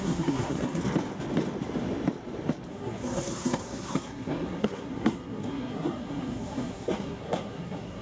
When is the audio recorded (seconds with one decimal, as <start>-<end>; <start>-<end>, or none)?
0.8-2.7